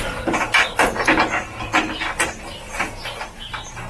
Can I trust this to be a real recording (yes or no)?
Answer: yes